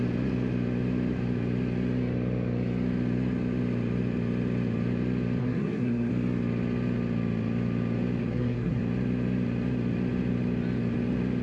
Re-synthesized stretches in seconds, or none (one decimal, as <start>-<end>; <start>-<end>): 5.4-6.1; 8.2-8.8